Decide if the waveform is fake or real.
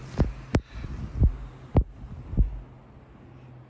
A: real